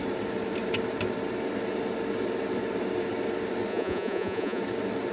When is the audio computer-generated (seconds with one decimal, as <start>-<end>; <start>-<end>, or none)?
3.7-4.6